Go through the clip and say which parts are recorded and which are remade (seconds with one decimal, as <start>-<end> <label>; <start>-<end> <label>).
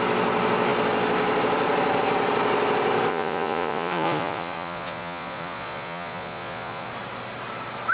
0.0-3.1 recorded; 3.1-6.9 remade; 6.9-7.9 recorded